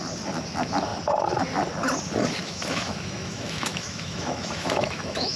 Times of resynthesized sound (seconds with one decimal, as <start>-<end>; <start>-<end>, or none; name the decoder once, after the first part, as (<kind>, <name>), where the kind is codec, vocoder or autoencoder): 2.4-5.4 (autoencoder, DAC-VAE)